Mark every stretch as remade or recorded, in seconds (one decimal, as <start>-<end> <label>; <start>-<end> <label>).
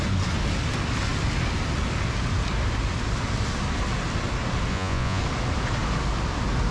0.0-4.7 recorded; 4.7-5.2 remade; 5.2-6.7 recorded